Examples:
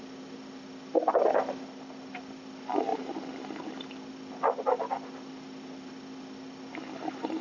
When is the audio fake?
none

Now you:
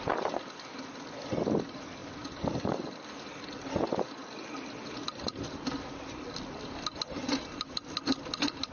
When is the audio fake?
none

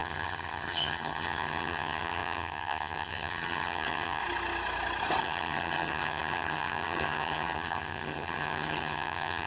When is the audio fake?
0.0-4.2 (vocoder, HiFi-GAN); 5.2-9.5

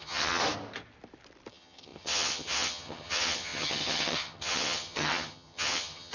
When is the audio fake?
0.0-0.4 (vocoder, HiFi-GAN); 1.5-6.1

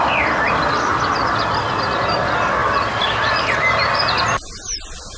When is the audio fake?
none

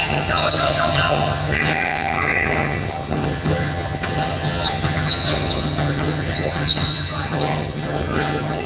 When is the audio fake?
0.0-8.7 (vocoder, HiFi-GAN)